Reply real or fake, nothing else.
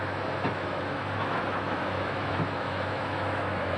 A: fake